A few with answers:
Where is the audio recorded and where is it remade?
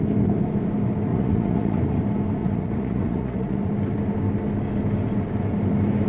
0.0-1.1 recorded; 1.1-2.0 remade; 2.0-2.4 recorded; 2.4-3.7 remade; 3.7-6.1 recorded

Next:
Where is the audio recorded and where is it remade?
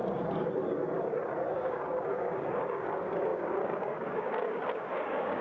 0.0-1.5 recorded; 1.5-5.4 remade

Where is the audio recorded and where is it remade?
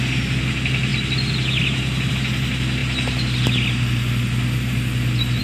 0.0-5.4 recorded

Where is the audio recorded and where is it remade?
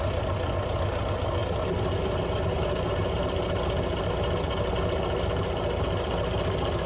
0.0-6.9 recorded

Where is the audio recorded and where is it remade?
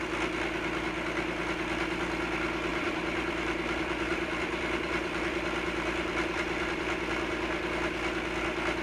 0.0-2.7 recorded; 2.7-6.8 remade; 6.8-8.8 recorded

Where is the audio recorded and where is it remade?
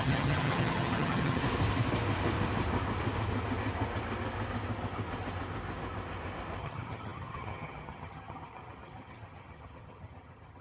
0.0-1.4 remade; 1.4-6.6 recorded; 6.6-10.6 remade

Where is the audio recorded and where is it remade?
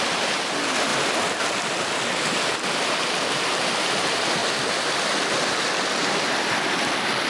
0.0-0.9 remade; 0.9-3.1 recorded; 3.1-7.3 remade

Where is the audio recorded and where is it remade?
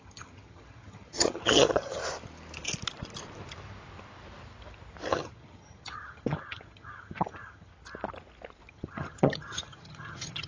0.0-2.0 remade; 2.0-5.1 recorded; 5.1-7.7 remade; 7.7-8.7 recorded; 8.7-10.5 remade